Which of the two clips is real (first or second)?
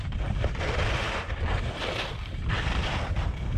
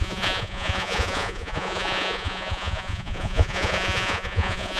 first